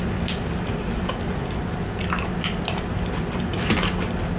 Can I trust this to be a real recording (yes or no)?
yes